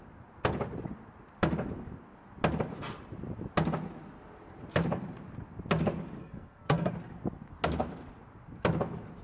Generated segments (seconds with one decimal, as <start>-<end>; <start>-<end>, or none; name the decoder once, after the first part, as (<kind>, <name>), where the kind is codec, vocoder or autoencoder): 6.2-6.9 (codec, SNAC)